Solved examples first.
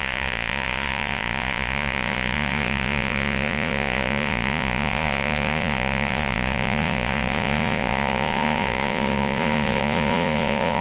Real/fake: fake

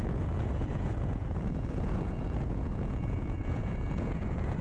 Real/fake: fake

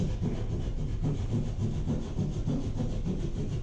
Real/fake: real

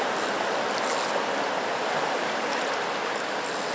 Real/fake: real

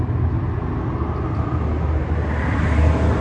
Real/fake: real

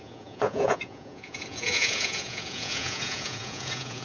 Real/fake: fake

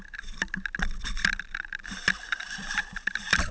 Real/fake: real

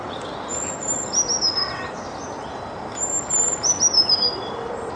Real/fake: real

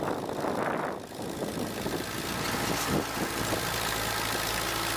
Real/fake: real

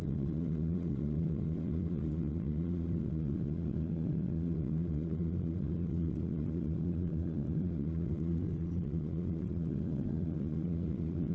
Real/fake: fake